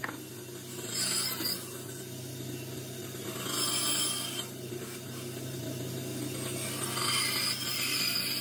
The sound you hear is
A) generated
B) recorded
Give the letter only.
B